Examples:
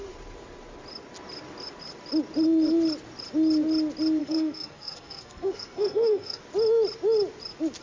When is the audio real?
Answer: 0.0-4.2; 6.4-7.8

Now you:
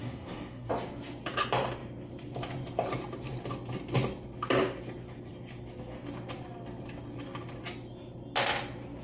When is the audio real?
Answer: 0.7-9.0

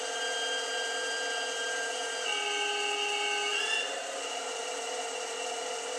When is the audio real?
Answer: 0.0-6.0

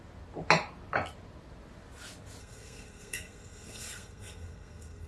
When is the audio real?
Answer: 0.0-2.4

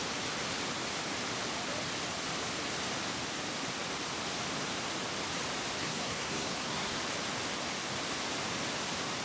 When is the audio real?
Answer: 0.0-5.8; 7.0-9.2